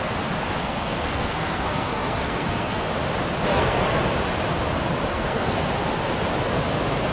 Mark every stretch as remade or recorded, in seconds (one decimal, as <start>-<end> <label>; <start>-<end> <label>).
0.0-0.6 recorded; 0.6-2.9 remade; 2.9-3.5 recorded; 3.5-4.0 remade; 4.0-5.1 recorded; 5.1-5.7 remade; 5.7-7.1 recorded